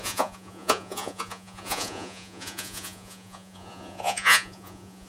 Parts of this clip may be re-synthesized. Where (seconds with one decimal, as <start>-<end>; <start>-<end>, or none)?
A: 0.0-5.1